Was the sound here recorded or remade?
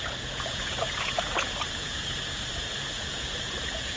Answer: remade